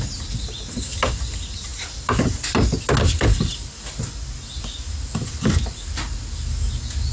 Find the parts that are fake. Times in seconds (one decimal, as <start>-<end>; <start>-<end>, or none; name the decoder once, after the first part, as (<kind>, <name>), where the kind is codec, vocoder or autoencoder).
none